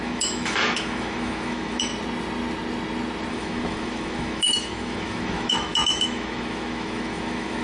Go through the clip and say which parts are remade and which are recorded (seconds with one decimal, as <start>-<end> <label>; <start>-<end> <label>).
0.0-1.9 remade; 1.9-3.3 recorded; 3.3-7.6 remade